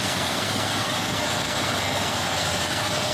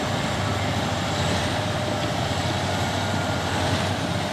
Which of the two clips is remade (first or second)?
first